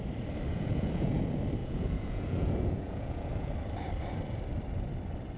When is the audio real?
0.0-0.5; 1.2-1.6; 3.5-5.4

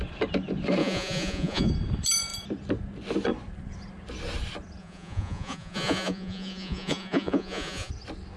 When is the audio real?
0.0-0.8; 1.7-4.8; 7.9-8.4

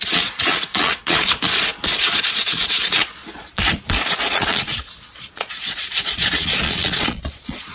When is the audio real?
none

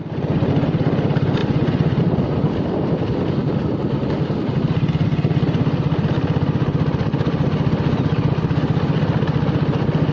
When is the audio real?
0.0-1.4; 2.0-10.1